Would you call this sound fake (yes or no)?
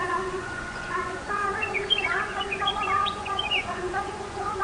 yes